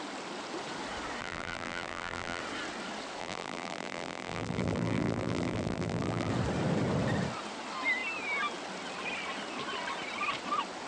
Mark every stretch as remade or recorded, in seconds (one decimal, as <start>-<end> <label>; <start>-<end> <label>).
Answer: 0.0-1.2 recorded; 1.2-2.4 remade; 2.4-3.2 recorded; 3.2-6.3 remade; 6.3-10.9 recorded